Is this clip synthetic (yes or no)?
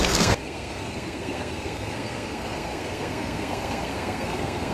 yes